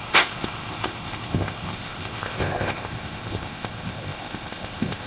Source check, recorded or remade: remade